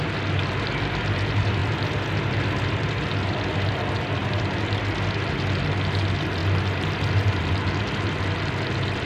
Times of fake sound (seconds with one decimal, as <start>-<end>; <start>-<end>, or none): none